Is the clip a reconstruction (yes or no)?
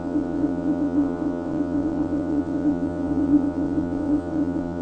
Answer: yes